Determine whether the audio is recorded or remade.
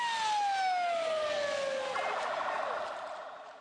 recorded